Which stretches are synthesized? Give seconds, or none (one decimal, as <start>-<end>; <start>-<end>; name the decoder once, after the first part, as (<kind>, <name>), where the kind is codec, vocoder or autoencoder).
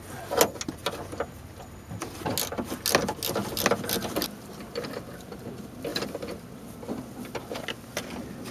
none